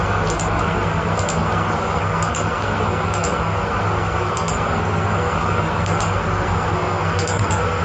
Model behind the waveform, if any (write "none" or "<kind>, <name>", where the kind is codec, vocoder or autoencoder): codec, SNAC